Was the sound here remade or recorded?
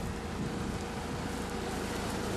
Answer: recorded